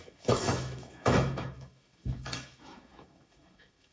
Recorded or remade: remade